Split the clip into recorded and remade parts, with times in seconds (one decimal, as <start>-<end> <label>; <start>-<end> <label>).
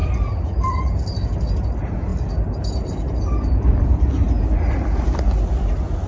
0.0-6.1 recorded